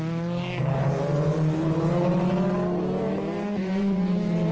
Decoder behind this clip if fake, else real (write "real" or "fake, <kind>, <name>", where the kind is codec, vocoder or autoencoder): real